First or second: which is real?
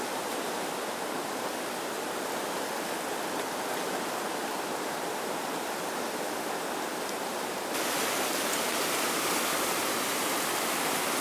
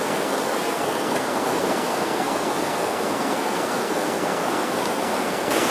first